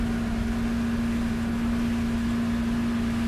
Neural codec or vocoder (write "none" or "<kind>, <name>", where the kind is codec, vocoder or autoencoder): none